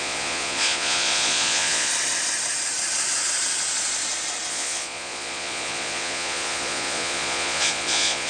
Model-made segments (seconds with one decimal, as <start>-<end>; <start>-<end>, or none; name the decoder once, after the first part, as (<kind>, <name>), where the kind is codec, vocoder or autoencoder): 0.0-1.9 (vocoder, Vocos); 4.5-8.3

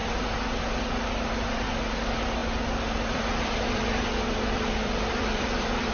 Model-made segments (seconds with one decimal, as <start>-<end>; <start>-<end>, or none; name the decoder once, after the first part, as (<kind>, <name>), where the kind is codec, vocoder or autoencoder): 2.4-5.9 (vocoder, BigVGAN v2)

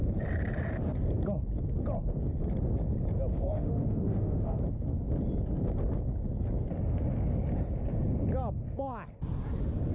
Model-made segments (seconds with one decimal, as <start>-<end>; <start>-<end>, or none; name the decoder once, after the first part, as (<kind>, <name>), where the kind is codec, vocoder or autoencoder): 3.3-4.6 (autoencoder, DAC-VAE)

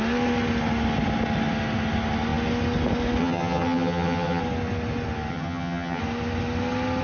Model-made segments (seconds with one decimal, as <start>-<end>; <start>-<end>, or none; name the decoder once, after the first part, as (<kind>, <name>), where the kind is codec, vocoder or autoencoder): 3.2-4.4 (vocoder, HiFi-GAN); 5.3-6.0

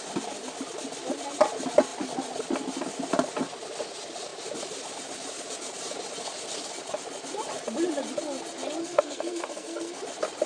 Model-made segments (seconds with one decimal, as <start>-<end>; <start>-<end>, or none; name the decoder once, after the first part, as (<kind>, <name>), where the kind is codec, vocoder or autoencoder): 8.8-10.0 (codec, SNAC)

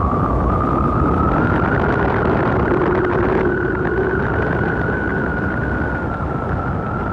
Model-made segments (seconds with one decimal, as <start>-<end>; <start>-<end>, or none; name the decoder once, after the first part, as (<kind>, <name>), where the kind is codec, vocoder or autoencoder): none

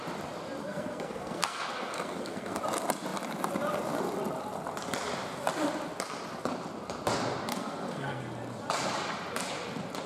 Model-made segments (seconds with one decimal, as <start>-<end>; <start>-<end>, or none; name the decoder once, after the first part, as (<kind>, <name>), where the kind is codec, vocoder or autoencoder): 0.6-2.6 (codec, SNAC); 7.5-8.2

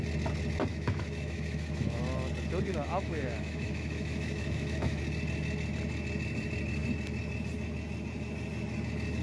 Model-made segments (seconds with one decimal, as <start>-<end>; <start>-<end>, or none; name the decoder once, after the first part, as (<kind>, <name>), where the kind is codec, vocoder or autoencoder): 0.7-2.0 (autoencoder, DAC-VAE); 2.7-5.0